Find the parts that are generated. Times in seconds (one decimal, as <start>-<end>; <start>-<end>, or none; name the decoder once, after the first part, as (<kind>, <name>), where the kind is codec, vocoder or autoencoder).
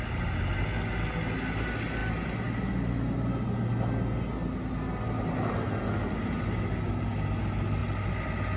none